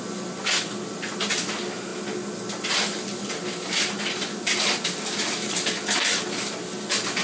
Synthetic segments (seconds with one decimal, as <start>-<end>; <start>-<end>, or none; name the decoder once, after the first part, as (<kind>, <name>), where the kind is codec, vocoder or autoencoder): none